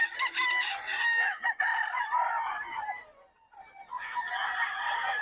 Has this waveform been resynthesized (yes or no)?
no